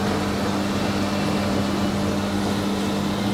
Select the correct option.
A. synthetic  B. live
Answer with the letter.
B